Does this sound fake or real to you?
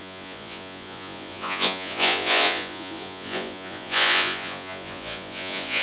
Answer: fake